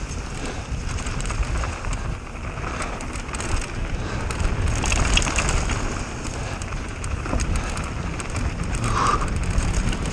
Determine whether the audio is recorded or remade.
recorded